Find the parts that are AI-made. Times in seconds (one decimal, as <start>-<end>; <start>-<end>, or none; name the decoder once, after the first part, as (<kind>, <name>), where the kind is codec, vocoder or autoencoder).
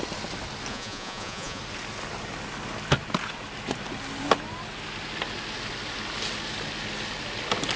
0.7-1.6 (vocoder, Vocos)